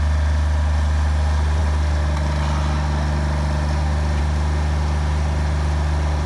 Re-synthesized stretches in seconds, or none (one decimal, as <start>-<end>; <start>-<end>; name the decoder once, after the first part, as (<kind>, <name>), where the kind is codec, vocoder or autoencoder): none